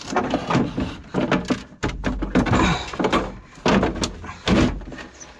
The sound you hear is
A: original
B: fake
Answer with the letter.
A